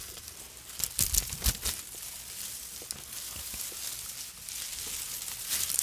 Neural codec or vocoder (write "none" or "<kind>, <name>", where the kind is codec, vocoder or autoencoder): none